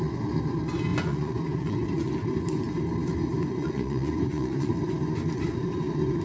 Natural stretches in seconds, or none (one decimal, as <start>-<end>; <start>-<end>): 0.0-0.9; 2.1-3.5; 4.7-6.2